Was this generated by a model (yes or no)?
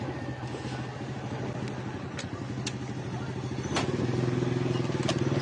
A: no